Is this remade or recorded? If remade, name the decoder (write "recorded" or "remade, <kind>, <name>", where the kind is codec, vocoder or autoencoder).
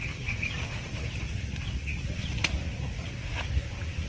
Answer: remade, vocoder, Vocos